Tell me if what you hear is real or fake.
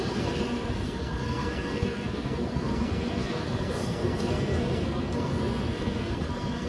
fake